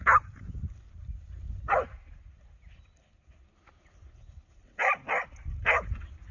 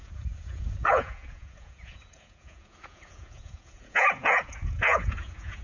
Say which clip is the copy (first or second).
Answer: second